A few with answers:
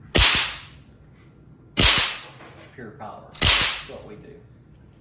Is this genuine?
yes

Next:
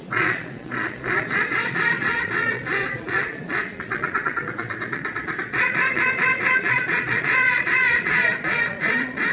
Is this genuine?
no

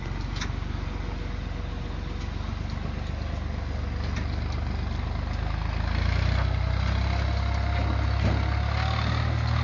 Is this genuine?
yes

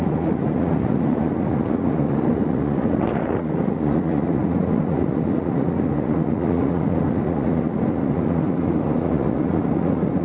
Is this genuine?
no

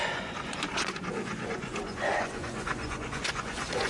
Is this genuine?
no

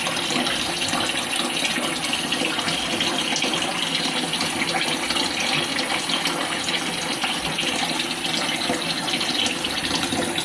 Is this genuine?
yes